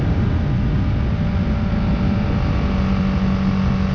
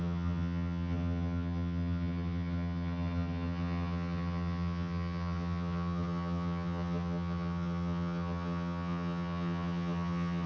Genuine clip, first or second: first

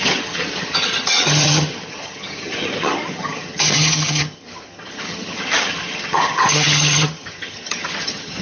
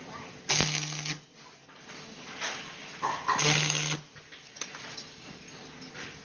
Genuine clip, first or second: second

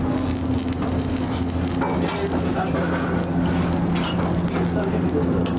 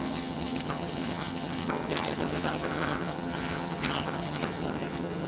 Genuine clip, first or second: first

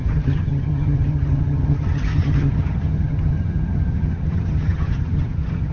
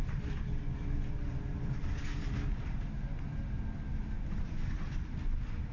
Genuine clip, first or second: second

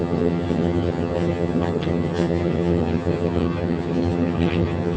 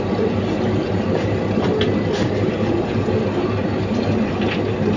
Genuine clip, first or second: second